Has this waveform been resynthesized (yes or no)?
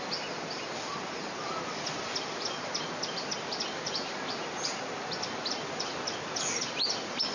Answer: no